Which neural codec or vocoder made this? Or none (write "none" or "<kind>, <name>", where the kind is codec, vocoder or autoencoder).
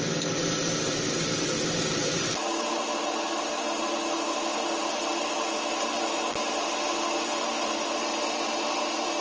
none